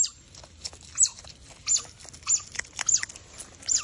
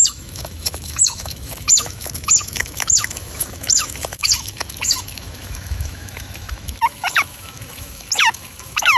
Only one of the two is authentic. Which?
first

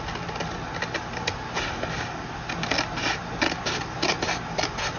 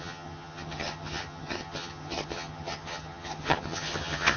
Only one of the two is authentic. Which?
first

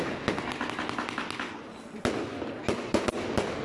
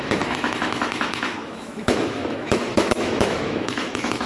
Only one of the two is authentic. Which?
first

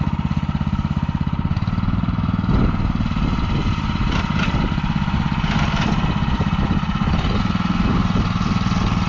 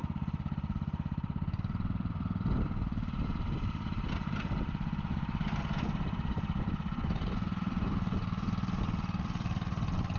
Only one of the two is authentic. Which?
first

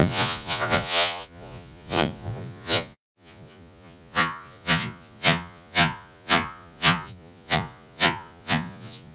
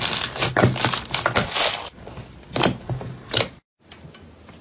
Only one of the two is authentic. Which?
second